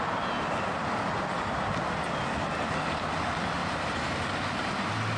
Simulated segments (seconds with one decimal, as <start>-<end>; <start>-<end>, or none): 3.6-4.2